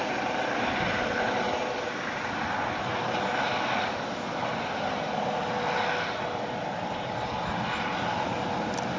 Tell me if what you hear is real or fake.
real